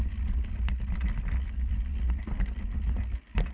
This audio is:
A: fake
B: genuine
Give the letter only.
B